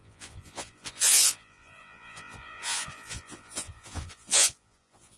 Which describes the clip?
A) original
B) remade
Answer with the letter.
B